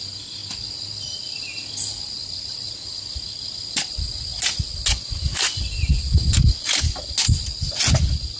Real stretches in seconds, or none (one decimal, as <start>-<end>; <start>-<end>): 0.0-8.4